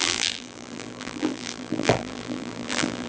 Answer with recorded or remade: remade